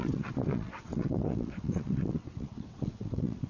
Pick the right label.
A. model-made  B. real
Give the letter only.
A